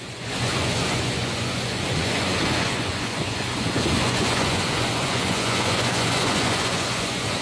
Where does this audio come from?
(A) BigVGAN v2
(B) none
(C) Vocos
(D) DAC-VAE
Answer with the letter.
C